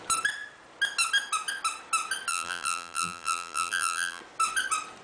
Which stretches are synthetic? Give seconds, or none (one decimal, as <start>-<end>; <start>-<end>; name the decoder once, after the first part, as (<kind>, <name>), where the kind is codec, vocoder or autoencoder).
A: 2.3-4.2 (vocoder, BigVGAN v2)